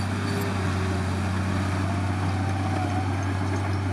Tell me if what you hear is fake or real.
real